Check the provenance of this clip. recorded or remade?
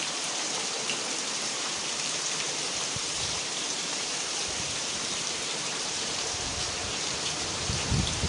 remade